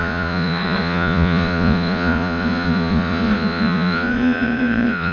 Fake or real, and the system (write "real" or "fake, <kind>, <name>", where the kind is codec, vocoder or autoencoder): fake, vocoder, Vocos